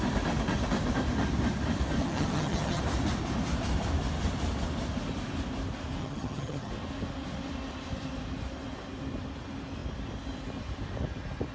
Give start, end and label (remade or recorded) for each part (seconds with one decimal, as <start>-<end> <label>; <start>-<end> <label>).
0.0-2.0 recorded; 2.0-2.8 remade; 2.8-6.0 recorded; 6.0-6.7 remade; 6.7-11.5 recorded